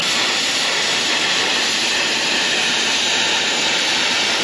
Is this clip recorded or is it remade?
remade